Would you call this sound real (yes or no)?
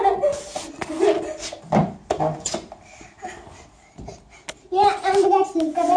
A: yes